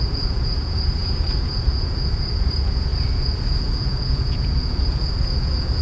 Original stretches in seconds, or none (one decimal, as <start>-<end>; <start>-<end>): none